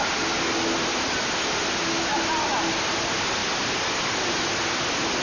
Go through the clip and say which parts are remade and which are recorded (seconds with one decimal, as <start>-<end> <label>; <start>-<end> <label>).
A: 0.0-5.2 recorded

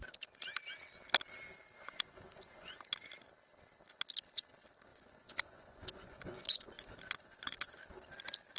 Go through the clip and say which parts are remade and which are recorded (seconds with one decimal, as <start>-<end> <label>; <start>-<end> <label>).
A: 0.0-1.8 recorded; 1.8-2.8 remade; 2.8-4.9 recorded; 4.9-7.8 remade; 7.8-8.6 recorded

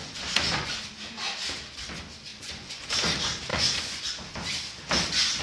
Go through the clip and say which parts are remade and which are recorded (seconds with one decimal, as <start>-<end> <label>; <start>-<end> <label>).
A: 0.0-0.8 remade; 0.8-2.3 recorded; 2.3-2.9 remade; 2.9-3.5 recorded; 3.5-4.0 remade; 4.0-5.4 recorded

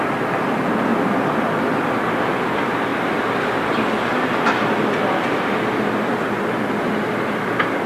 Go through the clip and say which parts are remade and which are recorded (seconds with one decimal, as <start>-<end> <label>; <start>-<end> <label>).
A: 0.0-7.9 recorded

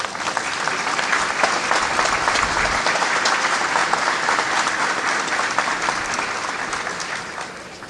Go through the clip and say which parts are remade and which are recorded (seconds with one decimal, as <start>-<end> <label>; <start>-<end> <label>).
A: 0.0-3.8 recorded; 3.8-4.5 remade; 4.5-7.9 recorded

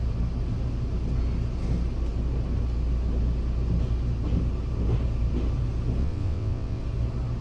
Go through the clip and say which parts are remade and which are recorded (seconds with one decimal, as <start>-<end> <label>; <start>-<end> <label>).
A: 0.0-6.0 recorded; 6.0-6.8 remade; 6.8-7.4 recorded

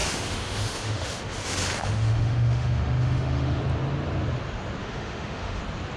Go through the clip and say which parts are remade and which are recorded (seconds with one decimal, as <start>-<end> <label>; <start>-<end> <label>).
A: 0.0-3.6 remade; 3.6-4.8 recorded; 4.8-5.6 remade; 5.6-6.0 recorded